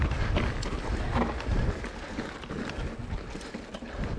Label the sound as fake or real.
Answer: real